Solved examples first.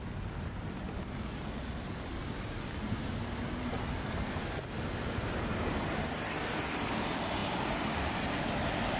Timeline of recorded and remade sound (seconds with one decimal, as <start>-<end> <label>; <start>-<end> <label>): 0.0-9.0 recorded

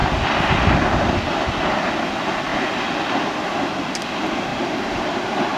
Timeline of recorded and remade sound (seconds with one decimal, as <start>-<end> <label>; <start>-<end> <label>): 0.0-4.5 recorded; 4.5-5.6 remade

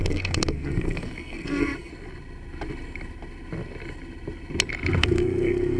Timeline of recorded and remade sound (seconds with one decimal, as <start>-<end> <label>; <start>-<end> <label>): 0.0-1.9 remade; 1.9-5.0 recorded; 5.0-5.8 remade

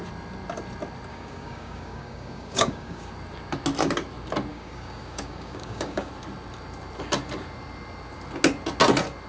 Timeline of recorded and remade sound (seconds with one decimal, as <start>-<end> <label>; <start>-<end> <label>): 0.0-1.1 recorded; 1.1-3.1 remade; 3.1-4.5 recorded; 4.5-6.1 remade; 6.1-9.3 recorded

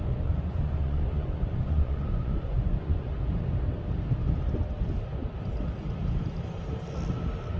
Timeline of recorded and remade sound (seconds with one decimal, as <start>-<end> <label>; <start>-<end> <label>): 0.0-3.1 remade; 3.1-7.6 recorded

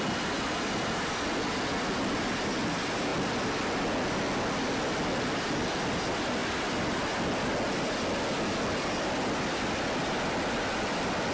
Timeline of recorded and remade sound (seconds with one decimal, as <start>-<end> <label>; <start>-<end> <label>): 0.0-11.3 recorded

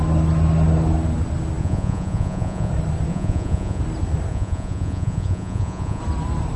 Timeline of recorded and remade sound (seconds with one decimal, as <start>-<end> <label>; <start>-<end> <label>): 0.0-1.6 recorded; 1.6-2.7 remade; 2.7-3.1 recorded; 3.1-3.8 remade; 3.8-4.3 recorded; 4.3-6.0 remade; 6.0-6.6 recorded

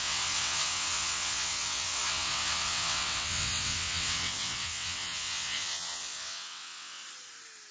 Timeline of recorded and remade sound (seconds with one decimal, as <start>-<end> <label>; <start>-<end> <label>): 0.0-7.0 remade; 7.0-7.7 recorded